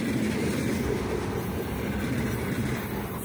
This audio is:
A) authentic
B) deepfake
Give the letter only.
B